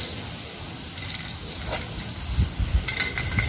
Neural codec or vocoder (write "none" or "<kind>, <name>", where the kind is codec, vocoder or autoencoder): none